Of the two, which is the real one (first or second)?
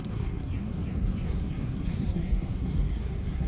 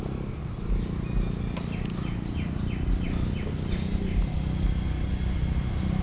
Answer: second